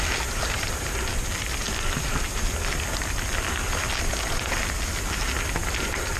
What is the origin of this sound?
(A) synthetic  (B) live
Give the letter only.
B